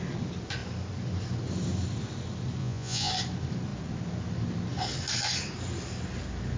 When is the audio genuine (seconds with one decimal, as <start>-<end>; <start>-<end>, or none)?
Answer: 0.0-2.6; 3.1-6.6